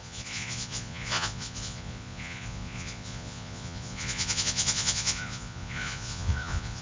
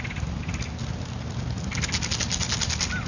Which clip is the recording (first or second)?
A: second